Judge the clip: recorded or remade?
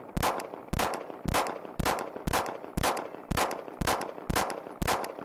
recorded